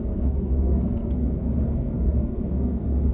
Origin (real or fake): fake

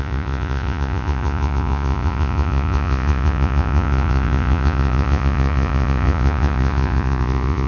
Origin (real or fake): fake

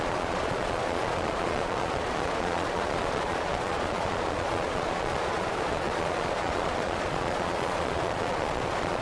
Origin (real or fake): fake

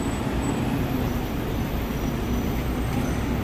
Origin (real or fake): real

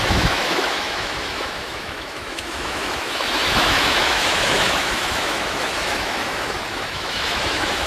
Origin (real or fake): fake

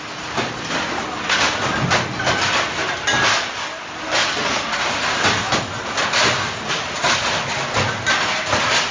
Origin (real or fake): real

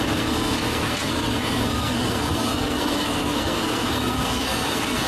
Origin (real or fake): fake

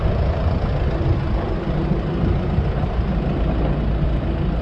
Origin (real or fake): real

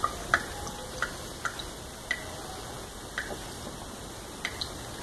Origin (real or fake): real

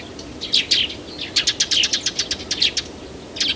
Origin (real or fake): real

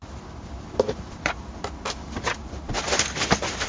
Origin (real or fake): real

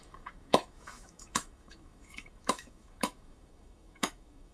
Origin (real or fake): fake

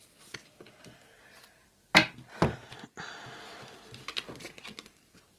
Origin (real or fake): real